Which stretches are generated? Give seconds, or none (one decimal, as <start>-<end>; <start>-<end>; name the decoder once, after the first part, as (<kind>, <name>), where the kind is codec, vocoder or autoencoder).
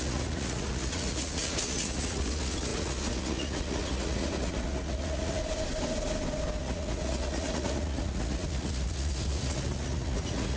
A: 0.0-5.4 (vocoder, Vocos); 6.6-10.6